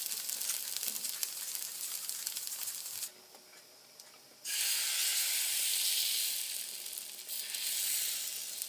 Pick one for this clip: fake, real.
real